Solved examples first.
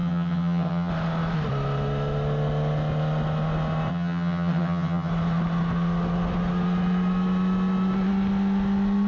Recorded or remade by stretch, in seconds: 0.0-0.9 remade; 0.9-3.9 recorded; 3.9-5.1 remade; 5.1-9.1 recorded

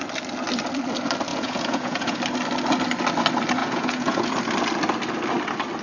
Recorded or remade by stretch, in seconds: 0.0-1.3 recorded; 1.3-2.2 remade; 2.2-3.6 recorded; 3.6-4.3 remade; 4.3-5.8 recorded

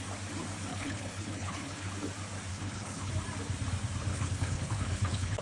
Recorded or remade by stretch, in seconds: 0.0-0.7 recorded; 0.7-1.9 remade; 1.9-2.5 recorded; 2.5-3.1 remade; 3.1-4.1 recorded; 4.1-5.4 remade

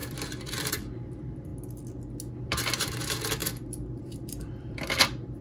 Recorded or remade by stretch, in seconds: 0.0-1.5 remade; 1.5-2.4 recorded; 2.4-3.4 remade; 3.4-4.0 recorded; 4.0-5.4 remade

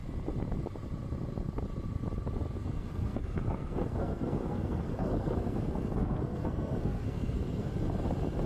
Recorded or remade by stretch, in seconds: 0.0-2.6 recorded; 2.6-7.7 remade; 7.7-8.5 recorded